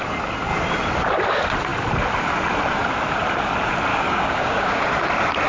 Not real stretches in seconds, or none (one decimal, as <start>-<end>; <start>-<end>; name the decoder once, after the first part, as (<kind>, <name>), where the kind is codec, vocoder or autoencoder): 3.9-4.8 (codec, DAC)